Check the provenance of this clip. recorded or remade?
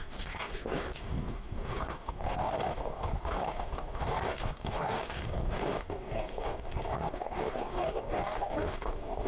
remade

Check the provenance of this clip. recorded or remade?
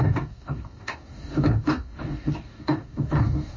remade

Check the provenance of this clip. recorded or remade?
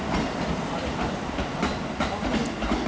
recorded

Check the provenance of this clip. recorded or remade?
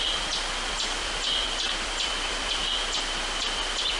recorded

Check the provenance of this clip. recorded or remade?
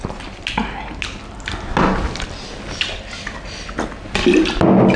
recorded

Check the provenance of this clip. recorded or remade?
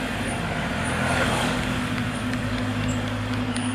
remade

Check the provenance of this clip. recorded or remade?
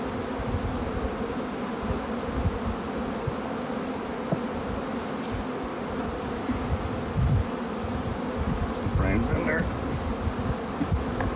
recorded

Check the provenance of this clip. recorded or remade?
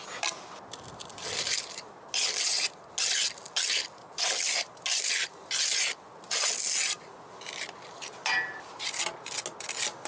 recorded